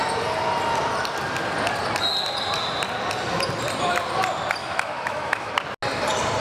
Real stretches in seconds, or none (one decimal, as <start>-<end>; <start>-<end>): 0.0-4.6; 5.5-6.4